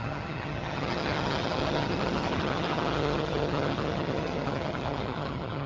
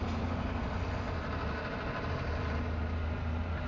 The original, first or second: second